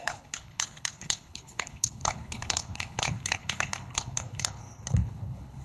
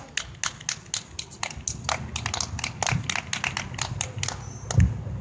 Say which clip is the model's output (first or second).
first